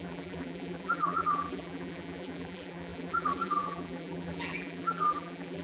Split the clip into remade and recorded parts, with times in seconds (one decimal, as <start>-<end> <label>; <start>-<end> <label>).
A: 0.0-5.6 remade